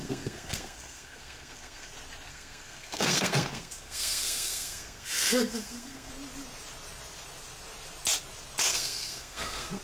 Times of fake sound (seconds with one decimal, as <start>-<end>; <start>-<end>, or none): 0.0-1.9; 2.3-6.1; 8.7-9.8